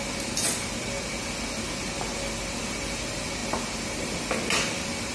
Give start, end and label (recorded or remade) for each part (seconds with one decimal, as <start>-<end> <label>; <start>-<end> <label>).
0.0-5.1 recorded